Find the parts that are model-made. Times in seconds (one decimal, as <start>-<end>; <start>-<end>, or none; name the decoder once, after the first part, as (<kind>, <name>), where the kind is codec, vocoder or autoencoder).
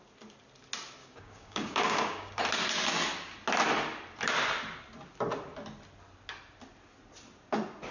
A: 1.0-2.4 (codec, DAC)